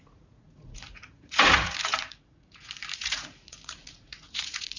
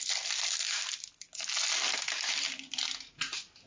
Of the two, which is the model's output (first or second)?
first